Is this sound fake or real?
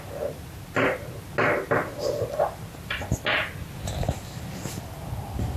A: real